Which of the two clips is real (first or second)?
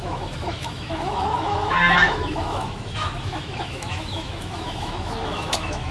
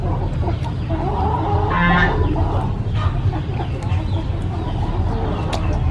second